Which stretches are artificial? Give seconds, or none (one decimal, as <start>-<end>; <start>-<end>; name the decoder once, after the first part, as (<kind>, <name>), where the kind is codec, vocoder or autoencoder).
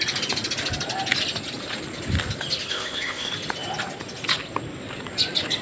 2.7-3.3 (codec, ZipCodec)